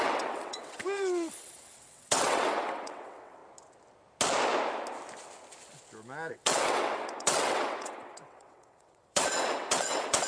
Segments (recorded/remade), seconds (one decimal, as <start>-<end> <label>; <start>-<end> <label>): 0.0-3.4 remade; 3.4-6.3 recorded; 6.3-10.3 remade